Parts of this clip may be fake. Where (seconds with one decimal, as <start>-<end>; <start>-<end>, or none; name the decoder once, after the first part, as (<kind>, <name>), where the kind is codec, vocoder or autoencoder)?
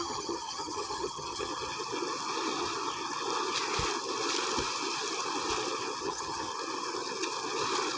0.0-1.5 (vocoder, HiFi-GAN); 6.0-6.5